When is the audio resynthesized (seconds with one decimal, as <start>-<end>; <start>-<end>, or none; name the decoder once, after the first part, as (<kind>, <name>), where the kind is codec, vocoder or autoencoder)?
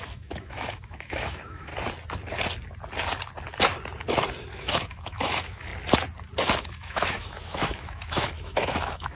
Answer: 0.0-1.7 (autoencoder, DAC-VAE); 4.5-5.7; 6.6-9.1